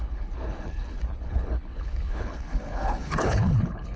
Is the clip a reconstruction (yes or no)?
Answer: yes